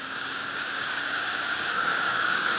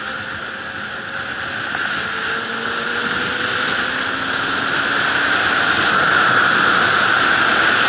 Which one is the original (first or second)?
second